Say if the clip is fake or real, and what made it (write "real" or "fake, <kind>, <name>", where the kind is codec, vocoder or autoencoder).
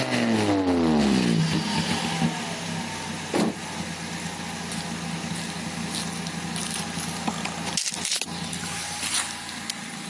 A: real